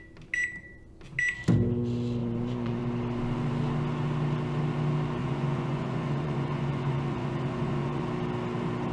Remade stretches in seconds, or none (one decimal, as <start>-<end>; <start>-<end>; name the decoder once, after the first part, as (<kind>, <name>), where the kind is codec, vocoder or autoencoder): 2.2-2.8 (vocoder, Vocos); 5.2-8.0